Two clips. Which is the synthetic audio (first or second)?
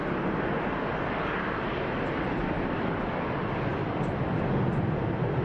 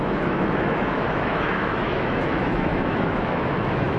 second